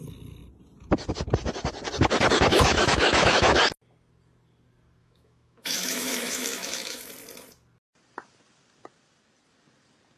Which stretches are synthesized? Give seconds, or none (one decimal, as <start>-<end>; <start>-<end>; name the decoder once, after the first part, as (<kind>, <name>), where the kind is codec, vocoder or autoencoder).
2.5-3.6 (autoencoder, DAC-VAE); 5.0-7.1